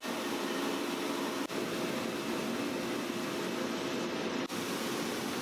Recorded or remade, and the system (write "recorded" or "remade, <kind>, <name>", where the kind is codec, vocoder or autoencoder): recorded